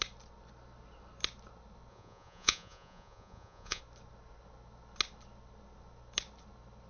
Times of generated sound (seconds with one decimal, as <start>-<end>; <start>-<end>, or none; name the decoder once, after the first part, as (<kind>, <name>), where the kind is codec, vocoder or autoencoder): 1.9-3.8 (vocoder, Vocos)